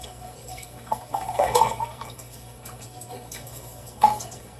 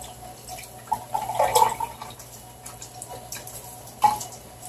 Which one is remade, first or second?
first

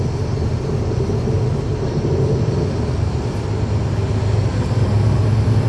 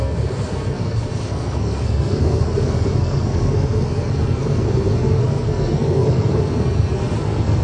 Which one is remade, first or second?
second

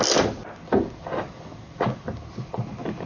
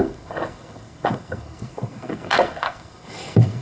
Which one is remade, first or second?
second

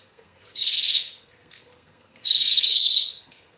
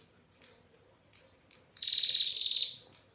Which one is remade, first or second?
first